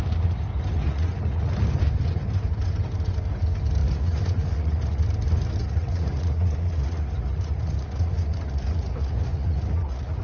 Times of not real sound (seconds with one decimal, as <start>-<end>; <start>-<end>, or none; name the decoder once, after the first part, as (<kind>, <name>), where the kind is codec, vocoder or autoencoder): 0.7-1.5 (vocoder, Vocos); 3.8-5.0; 5.6-10.2